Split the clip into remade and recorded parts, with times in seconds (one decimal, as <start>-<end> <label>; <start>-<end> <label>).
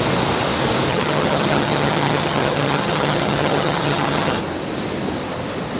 0.0-0.9 recorded; 0.9-4.4 remade; 4.4-5.8 recorded